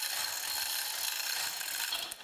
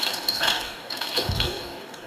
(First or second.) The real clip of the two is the first